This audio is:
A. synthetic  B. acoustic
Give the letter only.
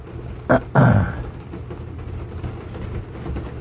B